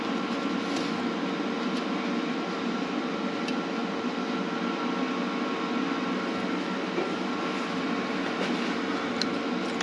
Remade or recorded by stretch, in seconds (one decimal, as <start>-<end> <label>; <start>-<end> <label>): 0.0-9.8 recorded